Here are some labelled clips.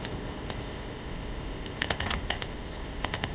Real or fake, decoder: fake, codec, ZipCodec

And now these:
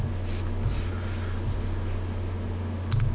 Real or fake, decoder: real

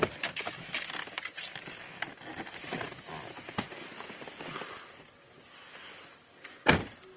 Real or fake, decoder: real